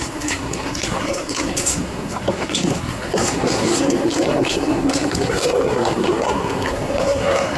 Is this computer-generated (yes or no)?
yes